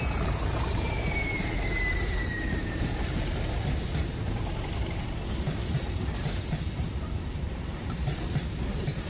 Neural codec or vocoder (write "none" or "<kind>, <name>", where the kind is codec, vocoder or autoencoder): vocoder, BigVGAN v2